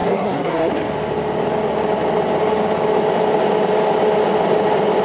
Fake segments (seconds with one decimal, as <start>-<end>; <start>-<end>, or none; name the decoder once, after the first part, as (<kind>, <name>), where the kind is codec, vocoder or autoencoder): 0.0-0.7 (codec, SNAC)